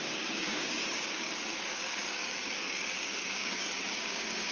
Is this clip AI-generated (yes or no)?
yes